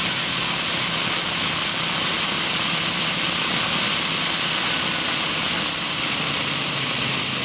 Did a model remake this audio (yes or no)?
no